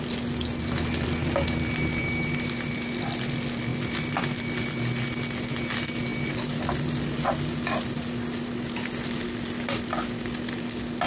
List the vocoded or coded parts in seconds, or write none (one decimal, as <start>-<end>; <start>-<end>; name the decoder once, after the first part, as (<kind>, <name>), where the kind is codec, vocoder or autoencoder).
none